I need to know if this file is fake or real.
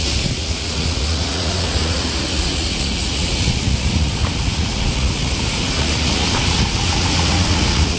fake